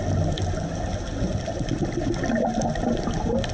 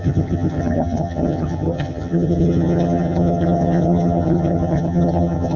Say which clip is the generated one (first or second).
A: second